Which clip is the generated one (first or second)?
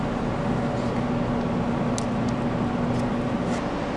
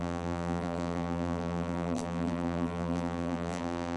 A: second